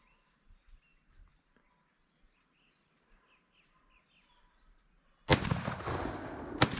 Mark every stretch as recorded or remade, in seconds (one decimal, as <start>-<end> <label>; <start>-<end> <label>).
0.0-6.8 recorded